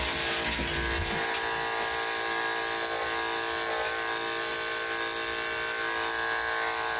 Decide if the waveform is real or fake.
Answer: real